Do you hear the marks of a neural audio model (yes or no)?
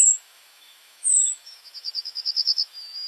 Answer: yes